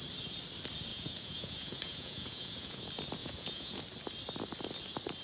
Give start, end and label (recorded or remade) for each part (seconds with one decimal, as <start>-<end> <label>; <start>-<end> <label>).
0.0-0.9 recorded; 0.9-2.8 remade; 2.8-3.2 recorded; 3.2-3.8 remade; 3.8-5.2 recorded

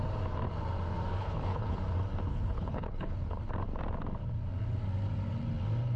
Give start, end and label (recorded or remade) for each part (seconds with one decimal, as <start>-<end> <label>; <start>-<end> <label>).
0.0-1.2 recorded; 1.2-1.8 remade; 1.8-2.3 recorded; 2.3-3.5 remade; 3.5-6.0 recorded

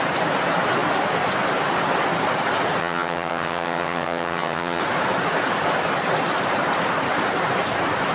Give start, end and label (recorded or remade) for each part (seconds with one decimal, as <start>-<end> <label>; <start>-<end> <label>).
0.0-2.8 recorded; 2.8-4.8 remade; 4.8-8.1 recorded

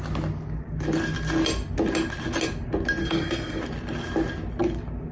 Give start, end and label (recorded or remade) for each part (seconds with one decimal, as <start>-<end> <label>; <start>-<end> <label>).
0.0-3.0 recorded; 3.0-3.6 remade; 3.6-5.1 recorded

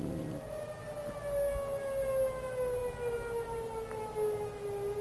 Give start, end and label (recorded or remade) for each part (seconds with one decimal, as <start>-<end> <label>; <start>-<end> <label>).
0.0-5.0 recorded

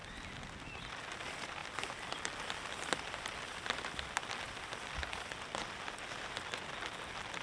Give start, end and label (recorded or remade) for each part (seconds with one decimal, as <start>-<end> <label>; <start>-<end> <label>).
0.0-7.4 recorded

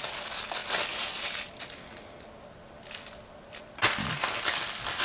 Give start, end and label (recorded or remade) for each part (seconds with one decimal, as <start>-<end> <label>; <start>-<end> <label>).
0.0-5.0 recorded

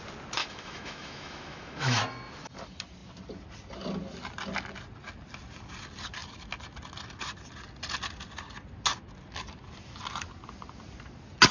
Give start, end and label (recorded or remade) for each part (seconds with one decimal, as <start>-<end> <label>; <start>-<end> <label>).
0.0-0.4 recorded; 0.4-2.0 remade; 2.0-11.5 recorded